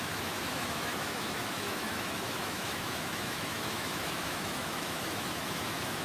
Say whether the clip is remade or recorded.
remade